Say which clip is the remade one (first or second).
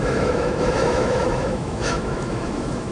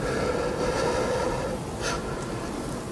first